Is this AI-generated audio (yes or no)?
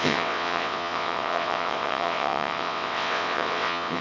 yes